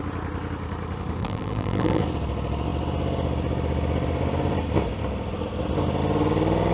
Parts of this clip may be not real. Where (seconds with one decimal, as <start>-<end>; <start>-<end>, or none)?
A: 1.2-2.0